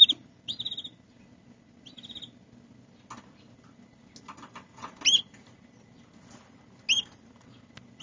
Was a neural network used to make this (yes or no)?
no